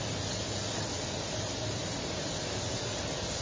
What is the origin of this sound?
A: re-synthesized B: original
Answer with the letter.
B